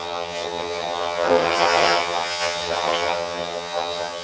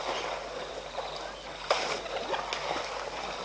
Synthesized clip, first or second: first